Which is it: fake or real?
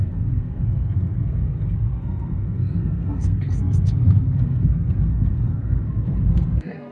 fake